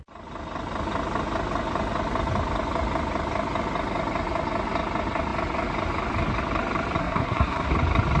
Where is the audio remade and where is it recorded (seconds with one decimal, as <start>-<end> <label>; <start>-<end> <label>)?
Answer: 0.0-7.0 recorded; 7.0-7.7 remade; 7.7-8.2 recorded